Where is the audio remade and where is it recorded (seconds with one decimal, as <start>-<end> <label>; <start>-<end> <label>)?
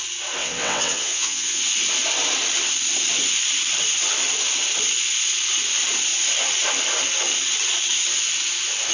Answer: 0.0-0.4 recorded; 0.4-1.6 remade; 1.6-8.9 recorded